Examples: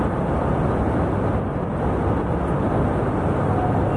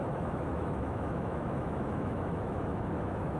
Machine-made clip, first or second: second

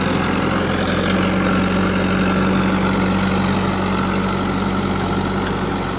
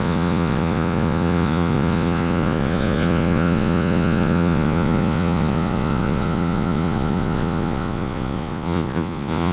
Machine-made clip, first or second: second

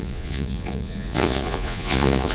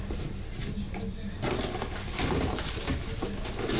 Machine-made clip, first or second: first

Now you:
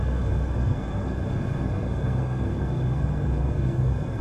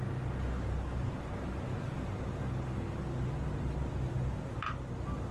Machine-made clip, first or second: first